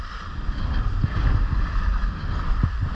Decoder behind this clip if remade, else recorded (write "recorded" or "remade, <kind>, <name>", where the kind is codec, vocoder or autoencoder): recorded